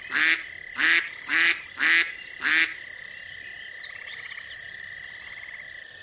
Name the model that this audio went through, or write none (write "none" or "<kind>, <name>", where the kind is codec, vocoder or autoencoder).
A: none